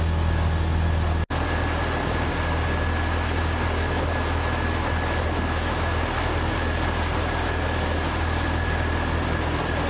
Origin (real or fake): real